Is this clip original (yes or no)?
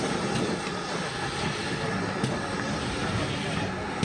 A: yes